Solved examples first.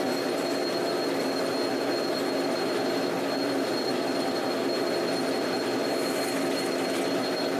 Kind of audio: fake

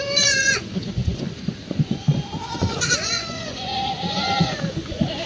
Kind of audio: fake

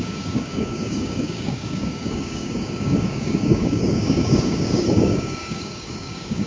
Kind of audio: fake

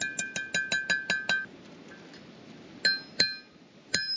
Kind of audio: real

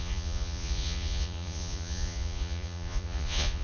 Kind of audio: fake